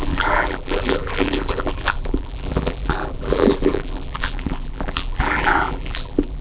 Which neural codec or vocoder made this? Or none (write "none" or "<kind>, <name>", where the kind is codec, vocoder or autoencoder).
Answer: vocoder, BigVGAN v2